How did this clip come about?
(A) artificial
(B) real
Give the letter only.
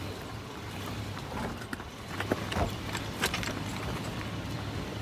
A